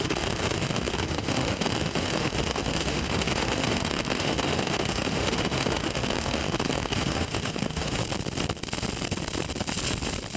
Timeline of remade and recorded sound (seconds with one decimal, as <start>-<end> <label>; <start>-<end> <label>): 0.0-8.0 remade; 8.0-10.4 recorded